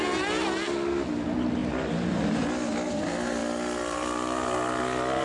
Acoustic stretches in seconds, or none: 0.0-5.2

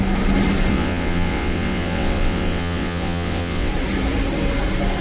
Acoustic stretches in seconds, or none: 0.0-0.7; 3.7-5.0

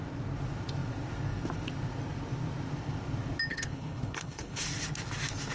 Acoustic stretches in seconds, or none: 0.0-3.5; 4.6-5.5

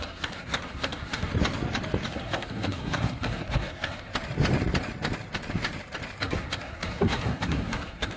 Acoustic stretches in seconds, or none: 1.3-2.1; 4.1-6.2